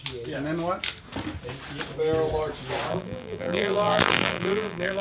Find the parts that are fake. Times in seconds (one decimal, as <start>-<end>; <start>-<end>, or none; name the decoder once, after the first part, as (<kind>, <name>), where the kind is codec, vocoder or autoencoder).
2.9-5.0 (vocoder, BigVGAN v2)